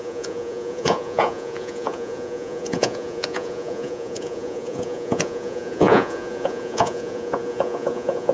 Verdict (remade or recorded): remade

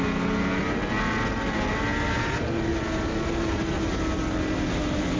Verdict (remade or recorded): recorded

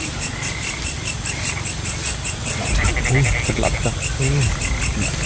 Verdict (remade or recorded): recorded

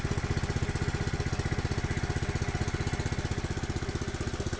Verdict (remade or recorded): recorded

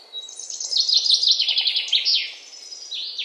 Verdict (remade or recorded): recorded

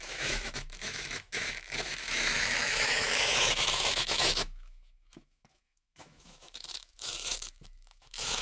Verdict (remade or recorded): remade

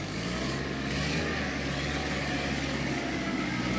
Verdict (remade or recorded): remade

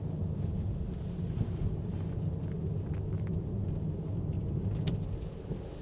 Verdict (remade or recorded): recorded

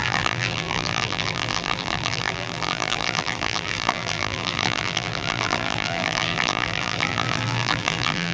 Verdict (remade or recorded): remade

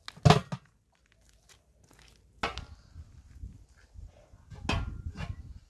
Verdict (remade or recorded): recorded